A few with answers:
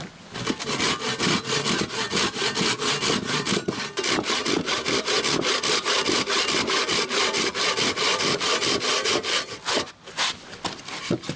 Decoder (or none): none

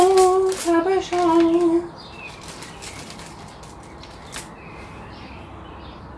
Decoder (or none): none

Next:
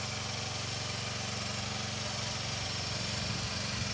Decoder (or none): none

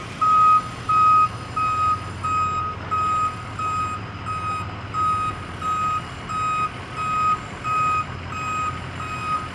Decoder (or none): none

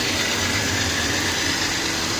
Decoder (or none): none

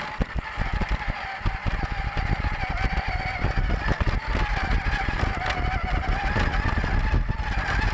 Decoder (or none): none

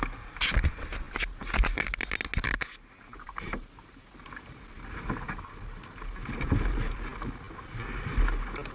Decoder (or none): none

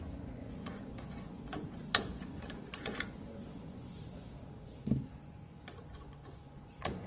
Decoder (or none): vocoder, Vocos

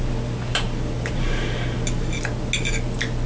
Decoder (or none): none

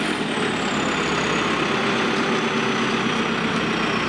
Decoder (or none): none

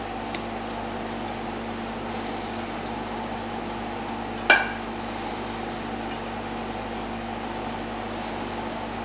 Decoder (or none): none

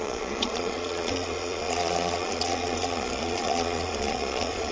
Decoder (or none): vocoder, Vocos